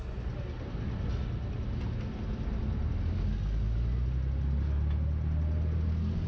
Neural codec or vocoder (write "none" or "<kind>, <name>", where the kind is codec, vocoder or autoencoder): none